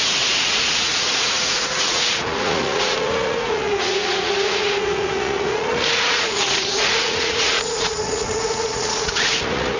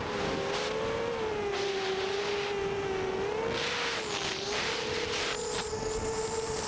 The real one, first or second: second